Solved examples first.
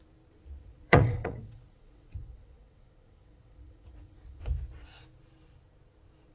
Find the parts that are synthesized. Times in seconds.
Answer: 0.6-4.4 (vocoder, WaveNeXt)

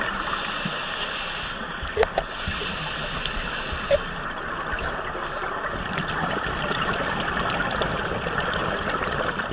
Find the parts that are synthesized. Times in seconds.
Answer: none